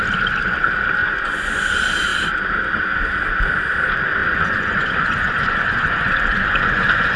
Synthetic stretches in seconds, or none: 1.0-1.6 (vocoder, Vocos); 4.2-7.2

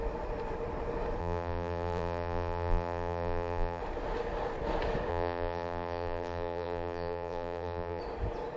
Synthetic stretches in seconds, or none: 1.2-3.8 (vocoder, BigVGAN v2); 5.1-8.0

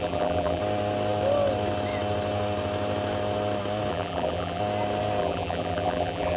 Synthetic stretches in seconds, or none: 0.0-0.6 (vocoder, BigVGAN v2); 3.9-4.6; 5.2-6.4

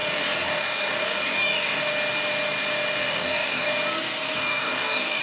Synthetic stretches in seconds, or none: 0.0-1.8 (codec, DAC); 3.0-3.7; 4.3-5.2

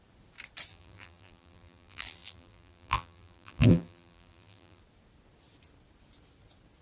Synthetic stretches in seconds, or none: 0.7-4.8 (vocoder, BigVGAN v2)

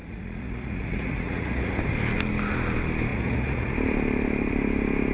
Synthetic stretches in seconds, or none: 0.0-1.8 (vocoder, Vocos); 3.1-3.7